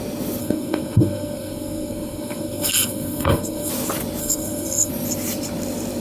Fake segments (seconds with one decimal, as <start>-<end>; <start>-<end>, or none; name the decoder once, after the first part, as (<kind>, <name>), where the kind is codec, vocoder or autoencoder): 0.4-3.7 (codec, SNAC); 4.2-4.9